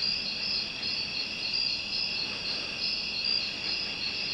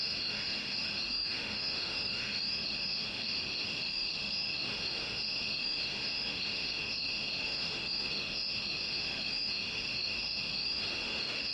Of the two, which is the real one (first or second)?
first